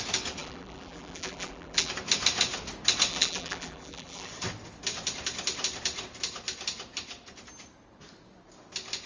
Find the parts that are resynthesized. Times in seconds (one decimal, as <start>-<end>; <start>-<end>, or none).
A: 0.4-1.9; 3.1-4.3